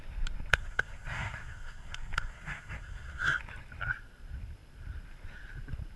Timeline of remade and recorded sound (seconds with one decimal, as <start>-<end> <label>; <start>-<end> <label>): 0.0-0.5 recorded; 0.5-3.4 remade; 3.4-6.0 recorded